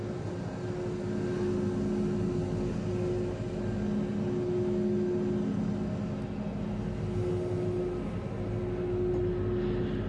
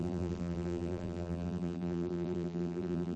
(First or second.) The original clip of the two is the first